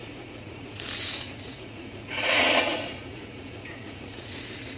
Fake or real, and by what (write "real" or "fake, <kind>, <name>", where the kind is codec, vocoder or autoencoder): fake, vocoder, Vocos